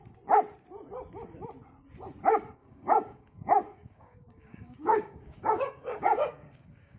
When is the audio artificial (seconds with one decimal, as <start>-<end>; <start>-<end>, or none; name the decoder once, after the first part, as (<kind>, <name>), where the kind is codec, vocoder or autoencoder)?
2.6-7.0 (codec, DAC)